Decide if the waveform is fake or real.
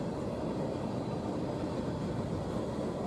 real